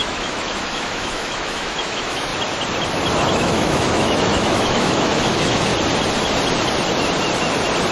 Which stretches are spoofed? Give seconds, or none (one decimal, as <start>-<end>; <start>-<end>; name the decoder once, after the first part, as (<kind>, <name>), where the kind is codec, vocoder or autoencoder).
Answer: 0.0-2.3 (autoencoder, DAC-VAE); 3.3-5.7

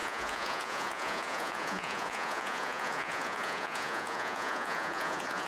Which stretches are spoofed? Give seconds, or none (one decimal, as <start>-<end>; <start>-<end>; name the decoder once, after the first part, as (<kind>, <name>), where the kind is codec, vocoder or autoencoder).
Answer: 0.0-5.5 (vocoder, Vocos)